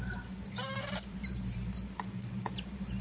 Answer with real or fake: fake